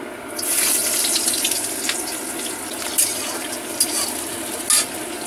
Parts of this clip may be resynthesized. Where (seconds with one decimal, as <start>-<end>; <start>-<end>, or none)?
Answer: none